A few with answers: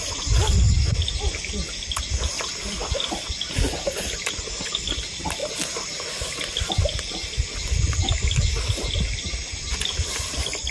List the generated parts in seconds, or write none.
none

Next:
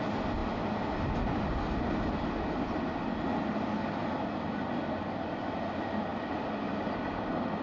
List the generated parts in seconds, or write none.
none

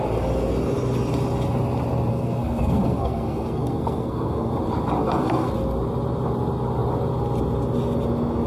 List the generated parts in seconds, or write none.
2.1-4.5 (codec, SNAC); 5.0-5.5

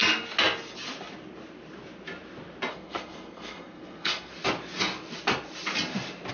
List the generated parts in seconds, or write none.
2.7-4.3 (codec, SNAC)

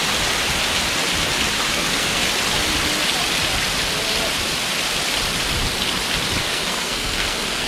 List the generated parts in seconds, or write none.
1.7-2.2 (codec, SNAC); 6.4-7.7

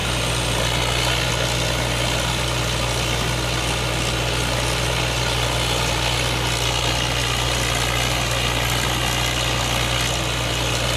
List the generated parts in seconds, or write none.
none